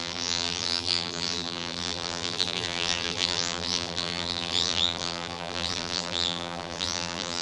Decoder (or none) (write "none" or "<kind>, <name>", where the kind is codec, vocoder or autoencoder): vocoder, BigVGAN v2